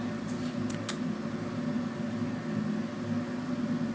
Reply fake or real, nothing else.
real